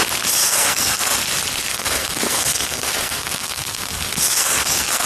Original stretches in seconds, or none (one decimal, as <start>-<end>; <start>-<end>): 0.0-0.4; 1.0-1.7